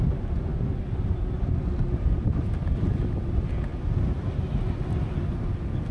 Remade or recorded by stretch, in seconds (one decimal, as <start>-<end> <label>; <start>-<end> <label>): 0.0-5.9 recorded